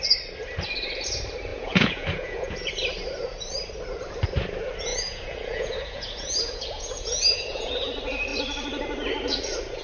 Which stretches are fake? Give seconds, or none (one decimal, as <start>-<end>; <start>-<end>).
1.5-2.7; 4.9-7.7